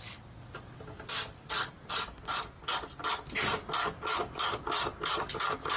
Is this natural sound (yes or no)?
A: yes